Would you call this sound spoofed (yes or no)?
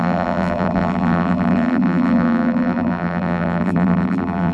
yes